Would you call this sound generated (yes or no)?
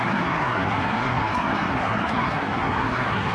yes